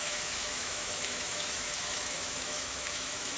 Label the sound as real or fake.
fake